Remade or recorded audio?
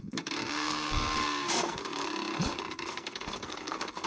remade